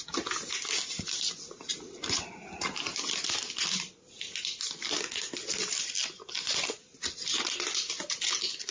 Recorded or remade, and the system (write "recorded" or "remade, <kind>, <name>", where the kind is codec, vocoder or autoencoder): recorded